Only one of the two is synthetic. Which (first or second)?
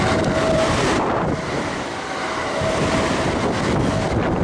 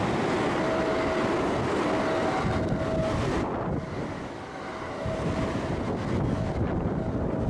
first